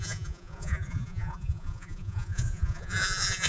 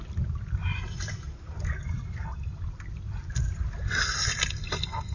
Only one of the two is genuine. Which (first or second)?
second